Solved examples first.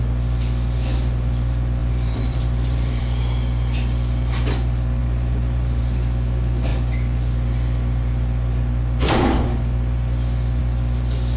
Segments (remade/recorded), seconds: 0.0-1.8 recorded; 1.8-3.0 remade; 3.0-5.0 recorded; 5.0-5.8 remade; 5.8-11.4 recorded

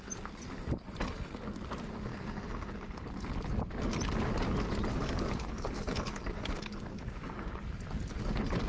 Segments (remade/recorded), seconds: 0.0-2.1 recorded; 2.1-3.3 remade; 3.3-4.9 recorded; 4.9-7.4 remade; 7.4-8.7 recorded

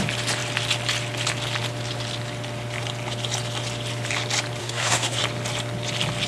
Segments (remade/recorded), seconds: 0.0-4.6 recorded; 4.6-5.2 remade; 5.2-6.3 recorded

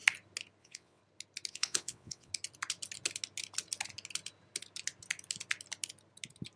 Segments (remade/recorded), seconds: 0.0-0.6 recorded; 0.6-1.0 remade; 1.0-1.5 recorded; 1.5-2.3 remade; 2.3-6.6 recorded

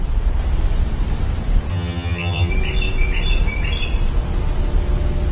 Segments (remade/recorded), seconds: 0.0-1.7 recorded; 1.7-2.5 remade; 2.5-5.3 recorded

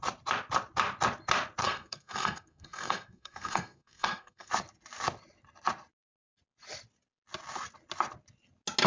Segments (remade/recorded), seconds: 0.0-1.6 recorded; 1.6-4.5 remade; 4.5-8.9 recorded

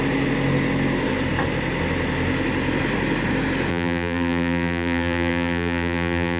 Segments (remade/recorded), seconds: 0.0-3.7 recorded; 3.7-6.4 remade